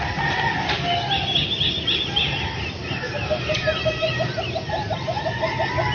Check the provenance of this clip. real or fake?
real